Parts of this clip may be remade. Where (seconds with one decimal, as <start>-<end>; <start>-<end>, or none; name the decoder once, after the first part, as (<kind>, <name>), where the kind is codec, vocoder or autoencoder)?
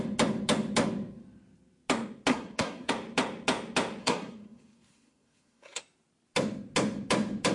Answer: 2.3-2.9 (codec, SNAC); 4.0-5.8